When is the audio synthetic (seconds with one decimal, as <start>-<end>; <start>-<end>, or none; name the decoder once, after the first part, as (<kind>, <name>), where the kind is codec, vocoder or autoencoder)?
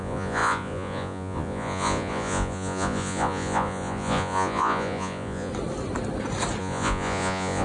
0.0-5.5 (vocoder, Vocos); 6.6-7.6